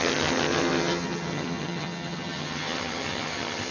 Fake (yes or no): yes